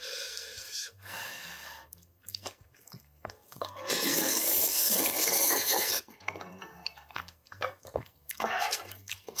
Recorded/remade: remade